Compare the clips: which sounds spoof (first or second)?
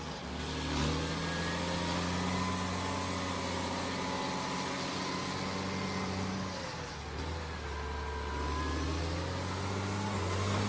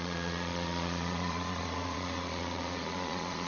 second